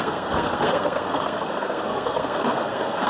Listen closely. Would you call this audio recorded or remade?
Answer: remade